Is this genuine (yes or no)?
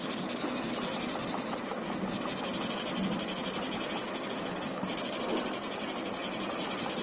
yes